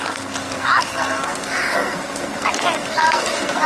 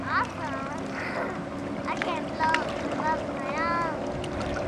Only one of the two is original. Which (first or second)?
second